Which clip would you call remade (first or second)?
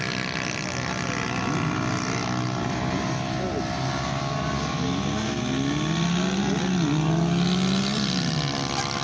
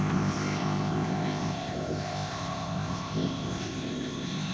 second